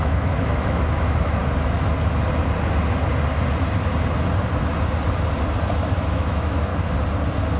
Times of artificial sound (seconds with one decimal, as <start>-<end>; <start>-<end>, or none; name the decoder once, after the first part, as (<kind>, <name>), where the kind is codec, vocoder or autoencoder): 0.0-1.4 (autoencoder, DAC-VAE); 6.0-6.7